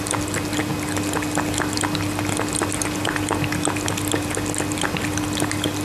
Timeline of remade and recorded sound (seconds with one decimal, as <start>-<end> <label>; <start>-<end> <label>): 0.0-5.8 recorded